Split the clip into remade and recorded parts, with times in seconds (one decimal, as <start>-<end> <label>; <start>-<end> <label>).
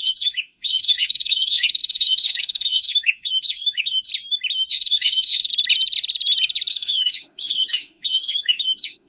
0.0-4.1 remade; 4.1-4.7 recorded; 4.7-5.5 remade; 5.5-6.7 recorded; 6.7-9.1 remade